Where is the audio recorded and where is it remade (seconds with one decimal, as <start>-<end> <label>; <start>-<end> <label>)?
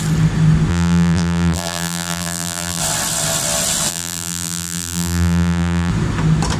0.0-0.7 recorded; 0.7-2.8 remade; 2.8-3.9 recorded; 3.9-5.9 remade; 5.9-6.6 recorded